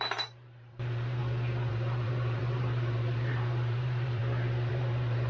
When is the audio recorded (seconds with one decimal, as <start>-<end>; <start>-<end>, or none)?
1.2-1.7; 4.2-4.7